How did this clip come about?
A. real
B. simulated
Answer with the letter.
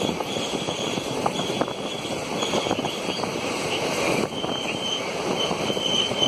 B